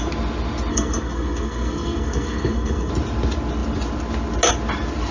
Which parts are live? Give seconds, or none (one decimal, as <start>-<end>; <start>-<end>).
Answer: 0.0-0.7; 2.9-5.1